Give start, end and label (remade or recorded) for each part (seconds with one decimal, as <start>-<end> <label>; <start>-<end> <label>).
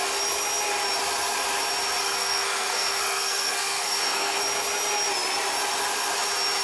0.0-2.0 recorded; 2.0-4.4 remade; 4.4-6.6 recorded